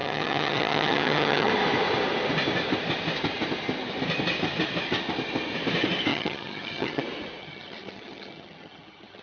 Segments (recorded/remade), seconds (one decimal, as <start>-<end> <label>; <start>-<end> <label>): 0.0-1.5 remade; 1.5-6.1 recorded; 6.1-7.0 remade; 7.0-7.4 recorded; 7.4-9.2 remade